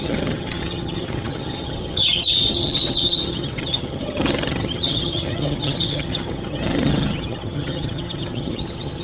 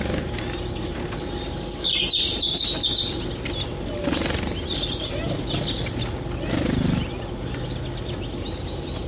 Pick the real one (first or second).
second